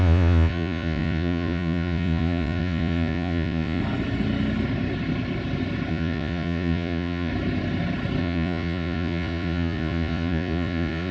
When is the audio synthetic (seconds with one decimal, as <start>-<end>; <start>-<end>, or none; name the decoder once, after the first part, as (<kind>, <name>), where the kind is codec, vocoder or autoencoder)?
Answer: 0.0-3.8 (vocoder, Vocos); 5.9-7.3; 8.2-11.1